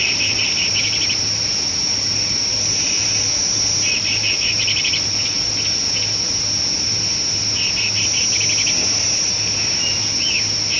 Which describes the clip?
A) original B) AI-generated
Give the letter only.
A